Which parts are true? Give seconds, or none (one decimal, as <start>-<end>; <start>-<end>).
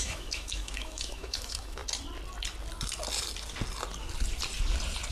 1.8-5.1